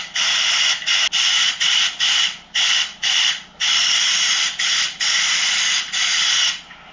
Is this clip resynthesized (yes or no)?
no